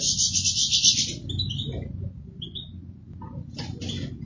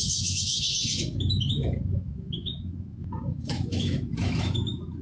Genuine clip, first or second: first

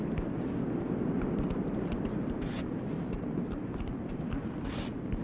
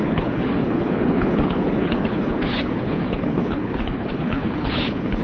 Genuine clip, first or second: first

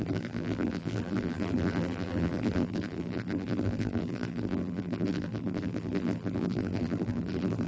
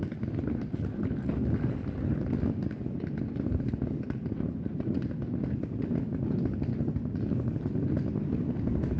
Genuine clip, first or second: second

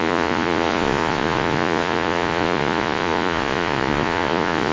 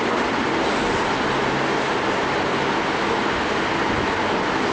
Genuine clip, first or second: second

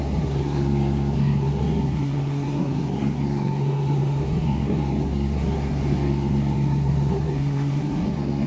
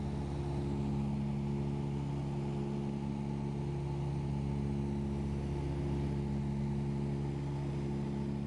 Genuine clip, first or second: second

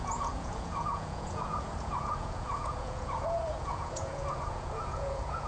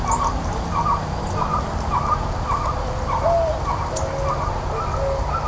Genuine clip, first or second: second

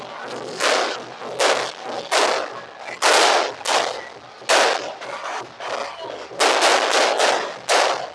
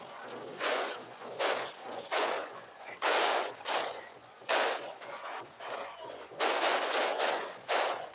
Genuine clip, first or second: first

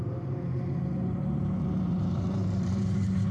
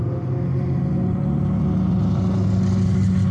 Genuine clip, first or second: second